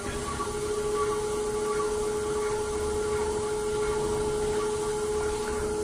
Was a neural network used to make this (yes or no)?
no